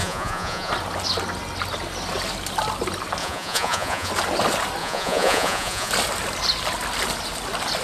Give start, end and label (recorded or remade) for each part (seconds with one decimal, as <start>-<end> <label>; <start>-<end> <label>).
0.0-0.7 remade; 0.7-3.2 recorded; 3.2-4.1 remade; 4.1-4.8 recorded; 4.8-5.9 remade; 5.9-7.8 recorded

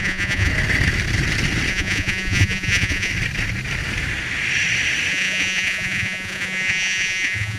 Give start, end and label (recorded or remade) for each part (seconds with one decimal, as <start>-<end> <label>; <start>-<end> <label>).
0.0-0.5 remade; 0.5-1.7 recorded; 1.7-3.1 remade; 3.1-5.1 recorded; 5.1-7.6 remade

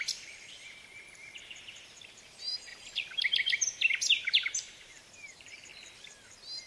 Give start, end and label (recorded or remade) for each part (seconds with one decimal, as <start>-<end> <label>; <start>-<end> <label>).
0.0-2.7 remade; 2.7-4.1 recorded; 4.1-5.7 remade; 5.7-6.7 recorded

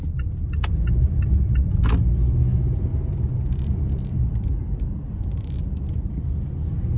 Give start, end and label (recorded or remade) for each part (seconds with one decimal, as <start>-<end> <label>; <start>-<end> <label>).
0.0-2.9 recorded; 2.9-6.2 remade; 6.2-7.0 recorded

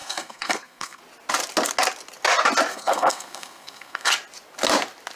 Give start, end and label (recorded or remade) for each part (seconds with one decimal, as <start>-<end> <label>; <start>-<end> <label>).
0.0-1.0 remade; 1.0-2.7 recorded; 2.7-4.1 remade; 4.1-5.2 recorded

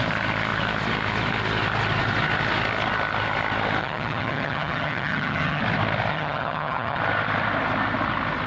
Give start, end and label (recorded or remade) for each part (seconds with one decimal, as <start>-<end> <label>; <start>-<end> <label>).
0.0-3.8 recorded; 3.8-5.6 remade; 5.6-6.1 recorded; 6.1-7.0 remade; 7.0-8.5 recorded